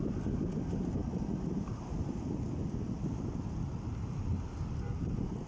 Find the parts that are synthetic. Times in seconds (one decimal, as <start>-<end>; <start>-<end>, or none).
none